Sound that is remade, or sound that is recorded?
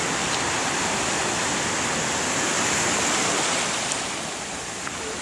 recorded